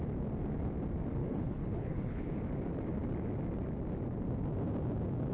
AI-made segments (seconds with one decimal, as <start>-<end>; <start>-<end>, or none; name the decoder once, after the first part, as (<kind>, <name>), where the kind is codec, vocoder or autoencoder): 1.2-2.2 (codec, HILCodec)